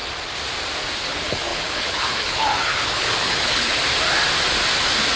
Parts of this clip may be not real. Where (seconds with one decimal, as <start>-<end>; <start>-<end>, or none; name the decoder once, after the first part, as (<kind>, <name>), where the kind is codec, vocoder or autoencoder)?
1.0-3.8 (codec, HILCodec)